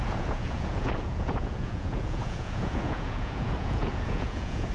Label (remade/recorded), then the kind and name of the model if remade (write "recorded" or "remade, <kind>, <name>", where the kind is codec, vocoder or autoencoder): remade, vocoder, Vocos